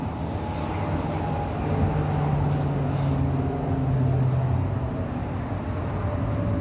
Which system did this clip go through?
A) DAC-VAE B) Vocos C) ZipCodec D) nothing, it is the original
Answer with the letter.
D